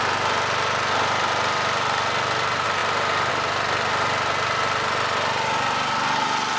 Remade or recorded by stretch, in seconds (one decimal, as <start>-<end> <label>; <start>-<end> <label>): 0.0-6.6 recorded